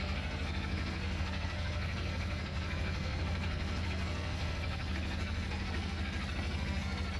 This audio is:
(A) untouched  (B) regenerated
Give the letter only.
B